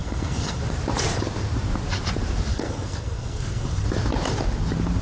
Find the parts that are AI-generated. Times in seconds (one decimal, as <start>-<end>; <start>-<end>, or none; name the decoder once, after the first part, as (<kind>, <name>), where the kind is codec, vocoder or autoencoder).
0.0-0.6 (codec, SNAC); 2.5-3.9